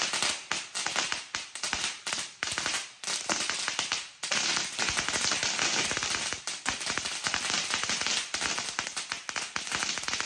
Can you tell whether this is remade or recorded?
recorded